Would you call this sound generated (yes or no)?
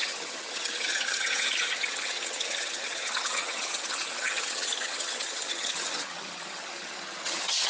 yes